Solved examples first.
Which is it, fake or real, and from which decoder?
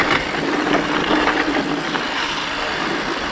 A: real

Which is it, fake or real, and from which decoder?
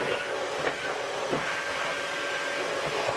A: real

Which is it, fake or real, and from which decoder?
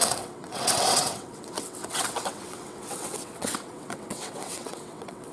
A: fake, vocoder, WaveNeXt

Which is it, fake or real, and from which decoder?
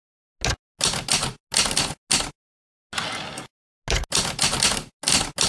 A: real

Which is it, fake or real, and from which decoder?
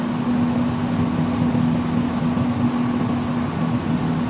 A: real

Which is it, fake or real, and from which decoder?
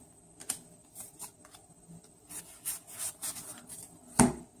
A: real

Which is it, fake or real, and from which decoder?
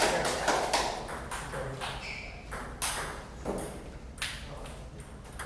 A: real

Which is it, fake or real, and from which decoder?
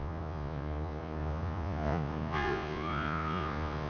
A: fake, vocoder, Vocos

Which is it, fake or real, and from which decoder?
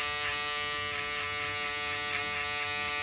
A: real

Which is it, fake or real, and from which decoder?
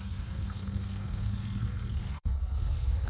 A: fake, codec, SNAC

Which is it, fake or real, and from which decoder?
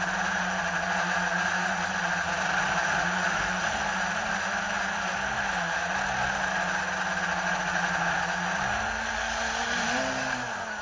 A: real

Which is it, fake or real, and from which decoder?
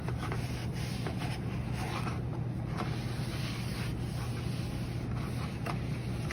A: real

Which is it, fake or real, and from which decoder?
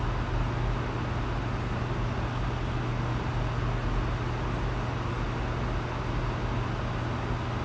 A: real